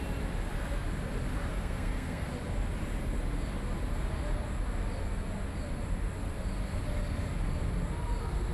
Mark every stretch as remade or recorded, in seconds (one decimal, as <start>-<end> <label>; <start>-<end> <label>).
0.0-1.5 recorded; 1.5-2.3 remade; 2.3-8.5 recorded